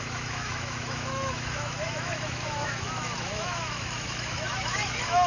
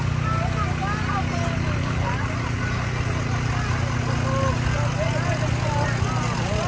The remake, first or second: first